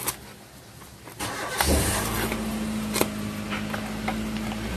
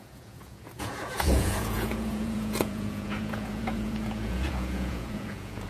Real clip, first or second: first